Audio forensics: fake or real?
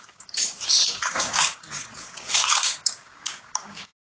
fake